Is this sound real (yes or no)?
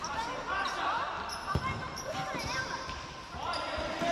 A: no